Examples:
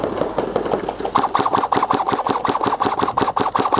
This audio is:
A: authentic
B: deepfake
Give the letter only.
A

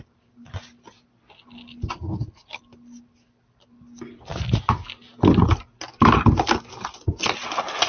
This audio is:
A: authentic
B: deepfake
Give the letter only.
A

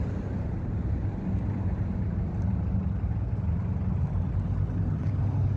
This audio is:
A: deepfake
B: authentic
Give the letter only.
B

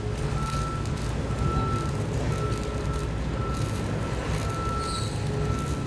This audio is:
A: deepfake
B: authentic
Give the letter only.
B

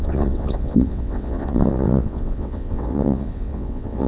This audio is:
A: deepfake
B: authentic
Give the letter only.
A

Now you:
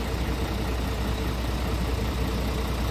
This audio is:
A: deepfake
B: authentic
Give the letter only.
B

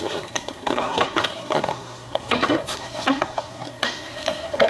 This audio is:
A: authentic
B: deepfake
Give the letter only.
B